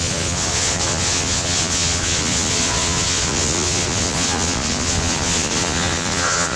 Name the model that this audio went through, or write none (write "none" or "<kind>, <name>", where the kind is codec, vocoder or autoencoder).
vocoder, Vocos